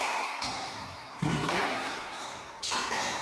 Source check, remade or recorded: remade